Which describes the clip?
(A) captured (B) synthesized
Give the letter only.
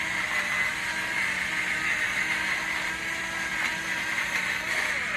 A